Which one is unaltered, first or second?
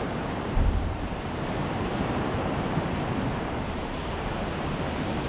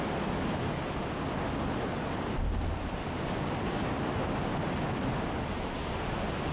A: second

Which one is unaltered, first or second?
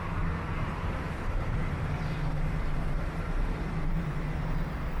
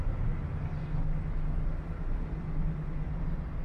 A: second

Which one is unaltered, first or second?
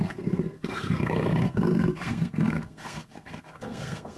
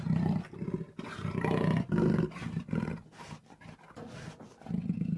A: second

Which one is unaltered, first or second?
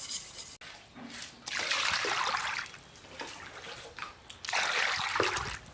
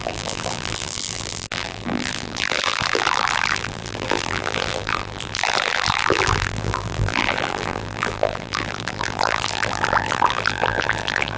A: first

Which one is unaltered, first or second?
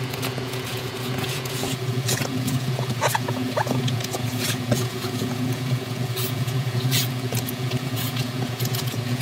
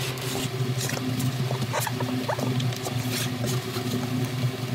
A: second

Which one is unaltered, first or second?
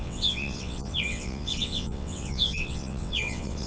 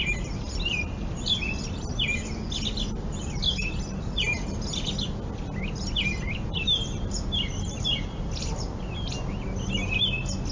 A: second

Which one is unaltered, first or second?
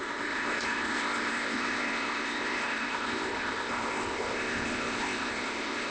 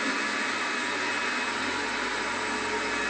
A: second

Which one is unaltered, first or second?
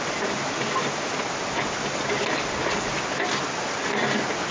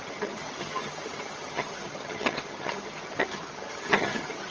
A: first